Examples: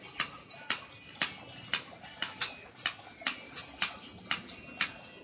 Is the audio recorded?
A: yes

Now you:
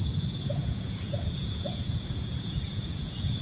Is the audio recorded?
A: no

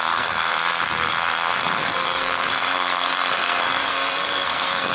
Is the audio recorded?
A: no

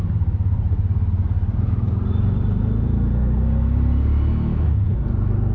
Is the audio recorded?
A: yes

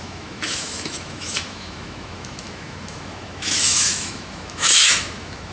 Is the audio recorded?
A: no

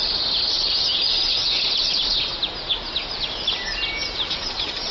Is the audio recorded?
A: yes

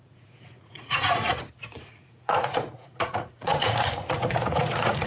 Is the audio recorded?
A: no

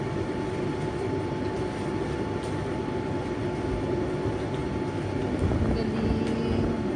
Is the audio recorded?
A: yes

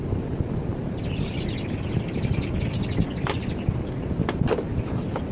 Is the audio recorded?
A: yes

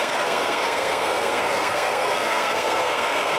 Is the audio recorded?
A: no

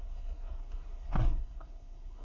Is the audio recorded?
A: no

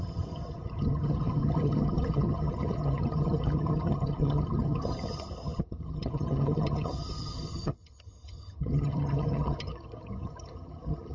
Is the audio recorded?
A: no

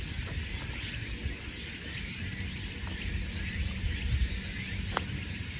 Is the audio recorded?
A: yes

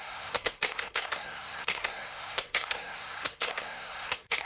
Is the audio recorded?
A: no